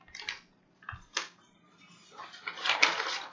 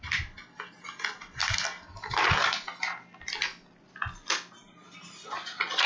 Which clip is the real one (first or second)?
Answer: second